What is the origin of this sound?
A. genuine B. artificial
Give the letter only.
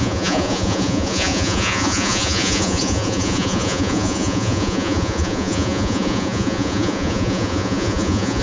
B